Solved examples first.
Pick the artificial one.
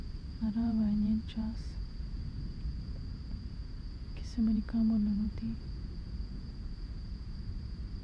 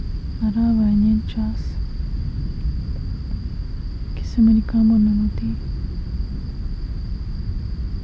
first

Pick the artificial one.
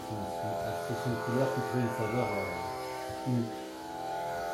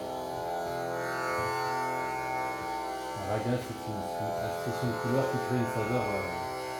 first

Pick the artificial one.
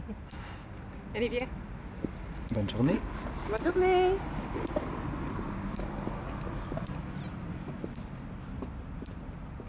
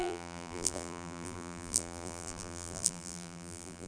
second